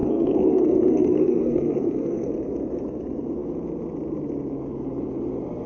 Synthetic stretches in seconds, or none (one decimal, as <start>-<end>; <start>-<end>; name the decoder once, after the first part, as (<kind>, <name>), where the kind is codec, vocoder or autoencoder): 0.0-2.3 (codec, SNAC)